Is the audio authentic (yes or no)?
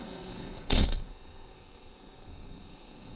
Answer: no